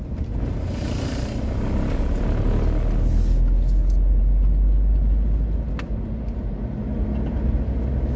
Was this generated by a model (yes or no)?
no